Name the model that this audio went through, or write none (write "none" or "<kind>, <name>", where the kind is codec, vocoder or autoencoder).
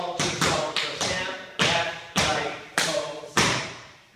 vocoder, BigVGAN v2